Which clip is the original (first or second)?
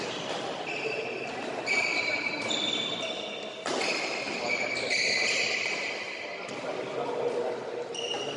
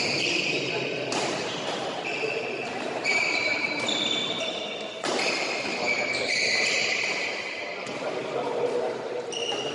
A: first